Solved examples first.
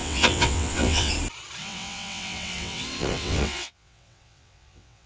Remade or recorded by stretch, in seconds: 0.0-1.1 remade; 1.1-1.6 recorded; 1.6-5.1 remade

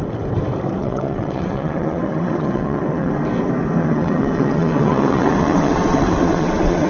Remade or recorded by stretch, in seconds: 0.0-0.8 recorded; 0.8-3.1 remade; 3.1-3.8 recorded; 3.8-6.9 remade

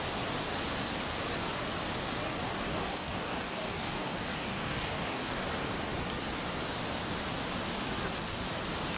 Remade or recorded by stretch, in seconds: 0.0-2.7 recorded; 2.7-5.4 remade; 5.4-9.0 recorded

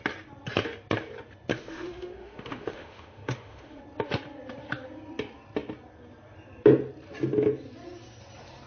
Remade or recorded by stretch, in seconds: 0.0-1.5 recorded; 1.5-3.8 remade; 3.8-8.7 recorded

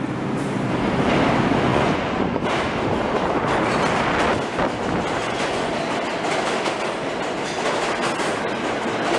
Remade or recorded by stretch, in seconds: 0.0-1.7 recorded; 1.7-2.4 remade; 2.4-5.2 recorded; 5.2-5.7 remade; 5.7-9.2 recorded